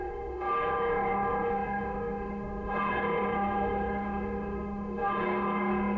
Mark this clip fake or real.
fake